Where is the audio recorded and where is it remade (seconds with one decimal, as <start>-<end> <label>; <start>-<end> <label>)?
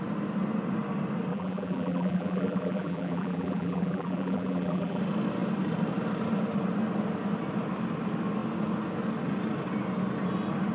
0.0-1.3 recorded; 1.3-5.0 remade; 5.0-10.7 recorded